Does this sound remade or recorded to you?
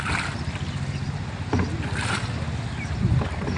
recorded